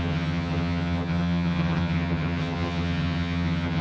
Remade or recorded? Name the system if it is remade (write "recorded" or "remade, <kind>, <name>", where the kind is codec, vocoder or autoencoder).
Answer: remade, vocoder, HiFi-GAN